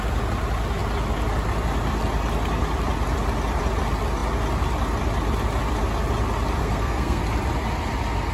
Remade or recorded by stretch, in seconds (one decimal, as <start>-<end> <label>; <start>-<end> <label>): 0.0-6.6 recorded; 6.6-7.2 remade; 7.2-8.3 recorded